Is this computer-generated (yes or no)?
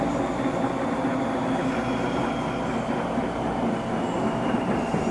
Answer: no